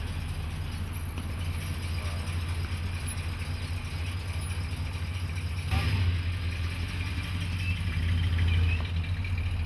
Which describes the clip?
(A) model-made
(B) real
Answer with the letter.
B